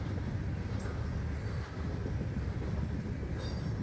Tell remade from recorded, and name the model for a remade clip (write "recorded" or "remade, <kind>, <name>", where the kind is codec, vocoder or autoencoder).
recorded